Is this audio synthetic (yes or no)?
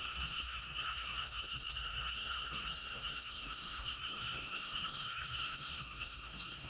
yes